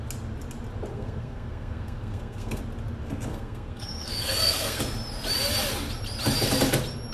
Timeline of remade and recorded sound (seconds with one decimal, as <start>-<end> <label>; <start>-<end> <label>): 0.0-0.9 recorded; 0.9-2.6 remade; 2.6-3.3 recorded; 3.3-4.8 remade; 4.8-7.1 recorded